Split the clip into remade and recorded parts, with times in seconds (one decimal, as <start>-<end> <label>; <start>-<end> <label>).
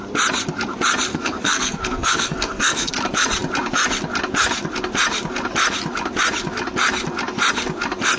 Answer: 0.0-1.1 recorded; 1.1-2.9 remade; 2.9-8.2 recorded